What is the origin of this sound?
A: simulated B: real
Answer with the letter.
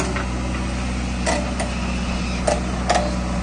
B